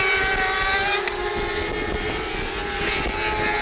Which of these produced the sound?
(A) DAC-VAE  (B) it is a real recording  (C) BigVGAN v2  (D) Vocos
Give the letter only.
B